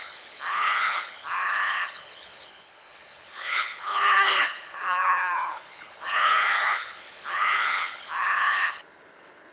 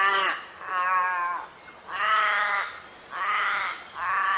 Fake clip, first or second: first